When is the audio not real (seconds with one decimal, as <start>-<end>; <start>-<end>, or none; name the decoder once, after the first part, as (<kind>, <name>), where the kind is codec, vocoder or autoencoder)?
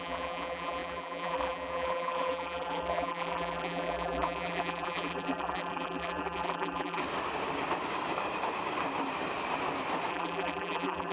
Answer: 0.0-7.0 (vocoder, BigVGAN v2); 10.1-11.1